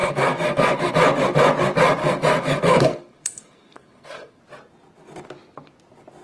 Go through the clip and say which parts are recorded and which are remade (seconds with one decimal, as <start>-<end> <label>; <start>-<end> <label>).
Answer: 0.0-0.9 remade; 0.9-2.0 recorded; 2.0-4.4 remade; 4.4-6.2 recorded